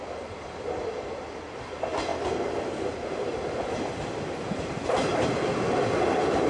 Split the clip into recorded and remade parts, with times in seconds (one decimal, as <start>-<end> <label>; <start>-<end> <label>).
0.0-2.1 recorded; 2.1-5.4 remade; 5.4-6.5 recorded